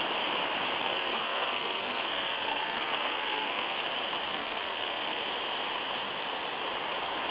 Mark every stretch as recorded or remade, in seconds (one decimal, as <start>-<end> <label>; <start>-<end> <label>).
0.0-0.8 recorded; 0.8-3.8 remade; 3.8-4.3 recorded; 4.3-5.2 remade; 5.2-7.3 recorded